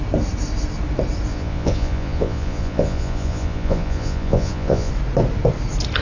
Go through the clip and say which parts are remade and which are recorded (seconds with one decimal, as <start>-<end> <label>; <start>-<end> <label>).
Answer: 0.0-1.3 recorded; 1.3-4.9 remade; 4.9-6.0 recorded